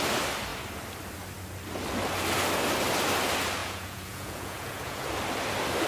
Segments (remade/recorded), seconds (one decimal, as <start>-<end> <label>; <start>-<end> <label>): 0.0-3.6 recorded; 3.6-5.0 remade; 5.0-5.9 recorded

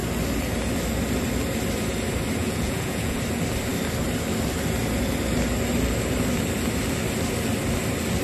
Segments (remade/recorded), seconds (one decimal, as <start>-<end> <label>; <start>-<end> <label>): 0.0-2.4 recorded; 2.4-3.2 remade; 3.2-8.2 recorded

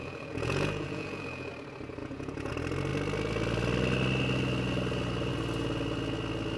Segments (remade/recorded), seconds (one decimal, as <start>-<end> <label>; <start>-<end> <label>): 0.0-1.5 remade; 1.5-2.0 recorded; 2.0-2.5 remade; 2.5-6.6 recorded

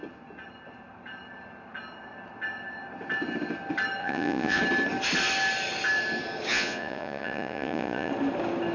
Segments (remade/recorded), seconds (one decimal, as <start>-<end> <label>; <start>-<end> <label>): 0.0-4.0 recorded; 4.0-4.6 remade; 4.6-6.5 recorded; 6.5-8.1 remade; 8.1-8.7 recorded

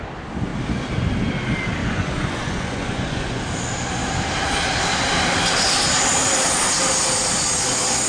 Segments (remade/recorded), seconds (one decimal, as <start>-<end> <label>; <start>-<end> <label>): 0.0-1.8 recorded; 1.8-3.4 remade; 3.4-8.1 recorded

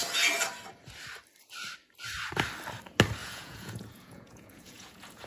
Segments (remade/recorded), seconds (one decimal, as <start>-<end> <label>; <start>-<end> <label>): 0.0-3.2 recorded; 3.2-5.3 remade